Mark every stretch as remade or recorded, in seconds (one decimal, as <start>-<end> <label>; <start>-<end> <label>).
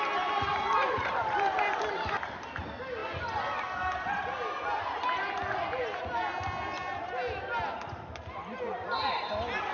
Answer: 0.0-0.5 recorded; 0.5-1.1 remade; 1.1-9.7 recorded